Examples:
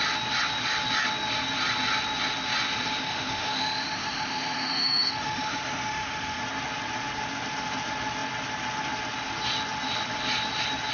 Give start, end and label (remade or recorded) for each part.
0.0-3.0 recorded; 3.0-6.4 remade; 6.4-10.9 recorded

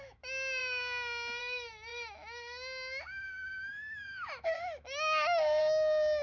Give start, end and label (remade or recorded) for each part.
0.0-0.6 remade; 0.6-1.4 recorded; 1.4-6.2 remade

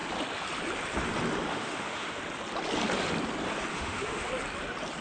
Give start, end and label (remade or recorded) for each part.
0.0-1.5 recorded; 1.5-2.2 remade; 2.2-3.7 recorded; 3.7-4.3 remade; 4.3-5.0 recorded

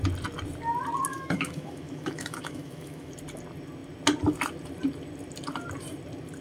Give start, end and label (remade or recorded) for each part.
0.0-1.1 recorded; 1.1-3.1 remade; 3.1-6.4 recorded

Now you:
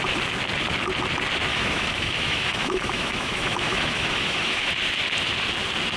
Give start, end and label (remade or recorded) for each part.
0.0-1.5 recorded; 1.5-4.7 remade; 4.7-6.0 recorded

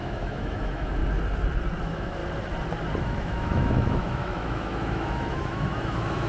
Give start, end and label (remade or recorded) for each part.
0.0-1.0 remade; 1.0-1.8 recorded; 1.8-2.2 remade; 2.2-3.0 recorded; 3.0-6.3 remade

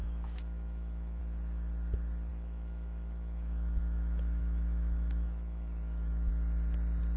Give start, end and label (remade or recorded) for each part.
0.0-1.2 remade; 1.2-2.3 recorded; 2.3-6.3 remade; 6.3-7.2 recorded